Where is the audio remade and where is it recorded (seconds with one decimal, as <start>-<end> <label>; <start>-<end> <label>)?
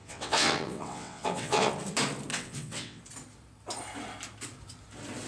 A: 0.0-1.7 remade; 1.7-2.3 recorded; 2.3-3.0 remade; 3.0-5.3 recorded